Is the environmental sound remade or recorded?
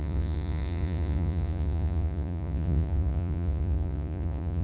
remade